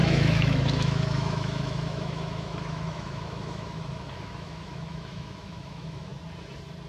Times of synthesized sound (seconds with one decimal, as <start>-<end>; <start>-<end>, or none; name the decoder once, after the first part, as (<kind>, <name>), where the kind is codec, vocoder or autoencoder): 0.0-6.1 (autoencoder, DAC-VAE)